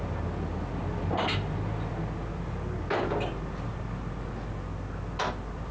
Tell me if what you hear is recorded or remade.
recorded